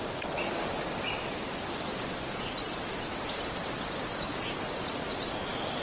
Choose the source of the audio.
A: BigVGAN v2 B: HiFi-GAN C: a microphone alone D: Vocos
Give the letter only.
C